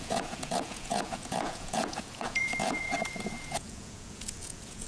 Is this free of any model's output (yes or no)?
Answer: no